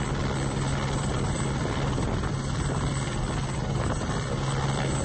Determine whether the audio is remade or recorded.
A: recorded